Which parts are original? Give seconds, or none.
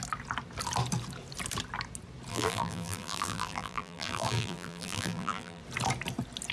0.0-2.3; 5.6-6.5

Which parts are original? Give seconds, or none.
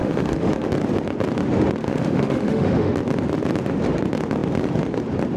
0.7-1.8; 2.9-5.4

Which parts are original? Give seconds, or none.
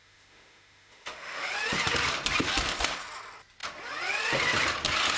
1.5-5.2